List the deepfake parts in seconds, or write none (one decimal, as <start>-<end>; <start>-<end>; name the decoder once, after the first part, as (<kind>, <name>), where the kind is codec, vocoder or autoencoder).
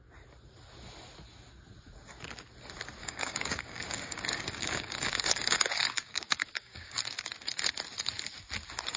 3.0-7.0 (codec, DAC)